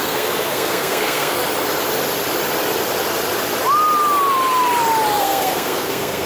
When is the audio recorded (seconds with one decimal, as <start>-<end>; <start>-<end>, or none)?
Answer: 1.4-5.2

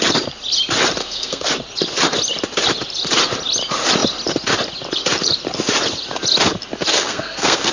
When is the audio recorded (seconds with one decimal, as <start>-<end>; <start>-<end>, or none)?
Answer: 0.0-1.0; 1.5-6.9

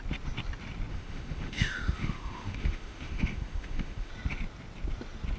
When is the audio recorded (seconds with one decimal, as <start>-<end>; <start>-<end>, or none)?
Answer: 0.0-0.9; 4.1-5.4

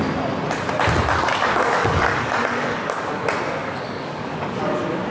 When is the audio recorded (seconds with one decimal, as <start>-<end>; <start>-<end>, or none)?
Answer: 0.0-1.3; 3.1-3.6; 4.6-5.1

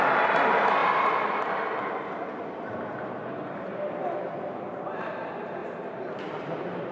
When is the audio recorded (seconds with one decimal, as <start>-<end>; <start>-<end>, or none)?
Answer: 0.0-6.9

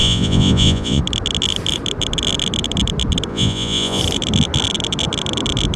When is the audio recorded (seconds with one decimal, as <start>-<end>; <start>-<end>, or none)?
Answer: 1.0-3.3; 4.0-5.8

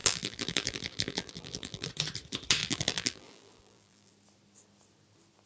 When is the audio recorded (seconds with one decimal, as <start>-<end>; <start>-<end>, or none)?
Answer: 1.9-2.6; 4.1-5.5